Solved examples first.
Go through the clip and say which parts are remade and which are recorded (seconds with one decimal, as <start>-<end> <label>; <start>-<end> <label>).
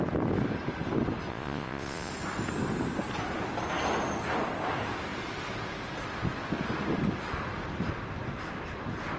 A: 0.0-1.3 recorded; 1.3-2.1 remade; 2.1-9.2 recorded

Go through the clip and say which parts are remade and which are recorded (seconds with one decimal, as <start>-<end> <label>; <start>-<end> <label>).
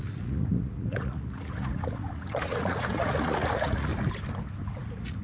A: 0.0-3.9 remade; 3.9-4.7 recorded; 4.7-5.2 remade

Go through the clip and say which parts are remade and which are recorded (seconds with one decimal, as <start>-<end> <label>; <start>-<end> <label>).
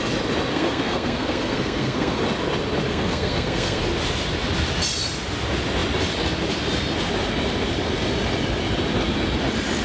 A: 0.0-0.5 recorded; 0.5-2.2 remade; 2.2-2.9 recorded; 2.9-3.8 remade; 3.8-9.8 recorded